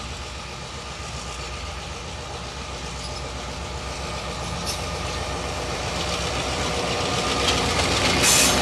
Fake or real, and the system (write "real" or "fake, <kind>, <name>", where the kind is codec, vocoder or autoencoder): real